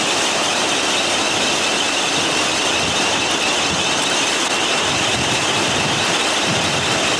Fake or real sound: real